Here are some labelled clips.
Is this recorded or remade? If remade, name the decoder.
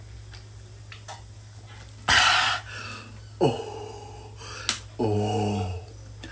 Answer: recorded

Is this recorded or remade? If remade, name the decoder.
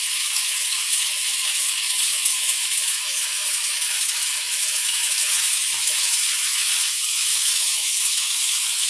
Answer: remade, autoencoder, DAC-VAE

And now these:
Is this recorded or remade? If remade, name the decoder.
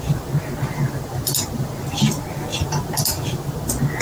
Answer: recorded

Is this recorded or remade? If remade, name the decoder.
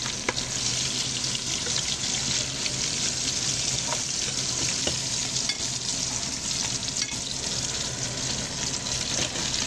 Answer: recorded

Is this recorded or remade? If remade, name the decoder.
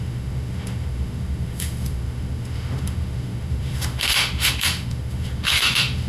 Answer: remade, autoencoder, DAC-VAE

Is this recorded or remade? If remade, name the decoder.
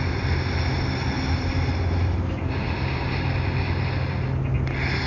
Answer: recorded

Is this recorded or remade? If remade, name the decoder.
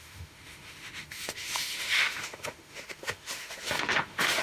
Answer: remade, autoencoder, DAC-VAE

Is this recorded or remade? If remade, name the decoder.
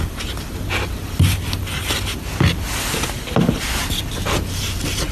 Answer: recorded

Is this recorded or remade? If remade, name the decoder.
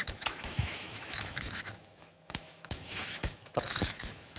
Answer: remade, autoencoder, DAC-VAE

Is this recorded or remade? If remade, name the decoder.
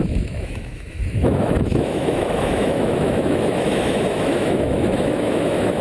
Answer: remade, autoencoder, DAC-VAE